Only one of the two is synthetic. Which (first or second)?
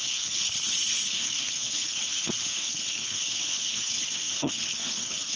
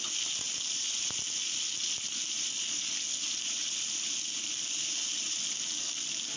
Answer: first